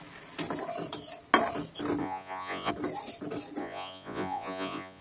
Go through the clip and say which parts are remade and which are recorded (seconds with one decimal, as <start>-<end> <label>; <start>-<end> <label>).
0.0-2.0 recorded; 2.0-2.7 remade; 2.7-3.6 recorded; 3.6-5.0 remade